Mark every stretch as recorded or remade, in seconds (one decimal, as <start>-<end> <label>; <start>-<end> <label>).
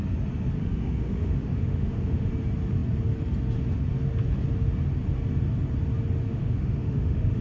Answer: 0.0-0.6 recorded; 0.6-2.3 remade; 2.3-6.3 recorded; 6.3-7.4 remade